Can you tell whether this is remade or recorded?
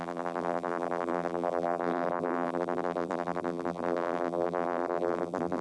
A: remade